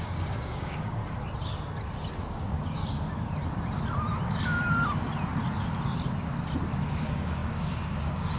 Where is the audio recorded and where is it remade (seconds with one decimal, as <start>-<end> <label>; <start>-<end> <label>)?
0.0-1.0 remade; 1.0-2.2 recorded; 2.2-2.8 remade; 2.8-6.9 recorded; 6.9-8.4 remade